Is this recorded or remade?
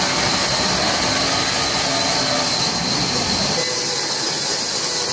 recorded